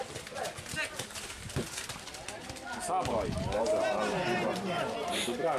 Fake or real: real